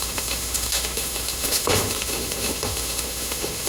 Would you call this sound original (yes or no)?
no